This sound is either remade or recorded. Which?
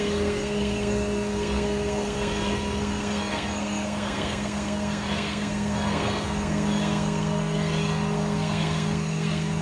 remade